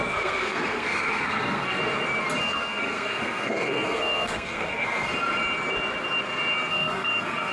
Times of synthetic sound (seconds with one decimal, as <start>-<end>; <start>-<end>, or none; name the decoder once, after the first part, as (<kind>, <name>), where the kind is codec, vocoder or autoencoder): 0.0-1.8 (codec, SNAC); 2.4-5.1; 6.7-7.5